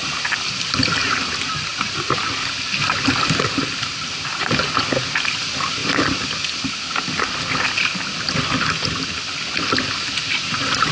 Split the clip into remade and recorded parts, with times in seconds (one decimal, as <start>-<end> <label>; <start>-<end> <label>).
0.0-10.9 recorded